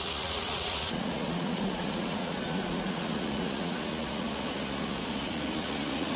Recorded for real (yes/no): no